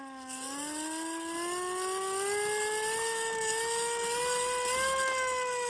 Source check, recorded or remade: recorded